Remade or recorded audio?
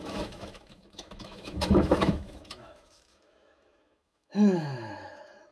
remade